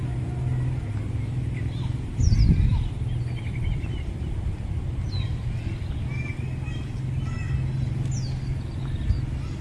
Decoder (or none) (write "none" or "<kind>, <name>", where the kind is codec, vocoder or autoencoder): none